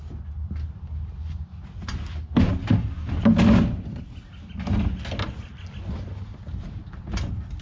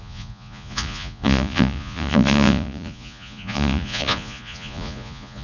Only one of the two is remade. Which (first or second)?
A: second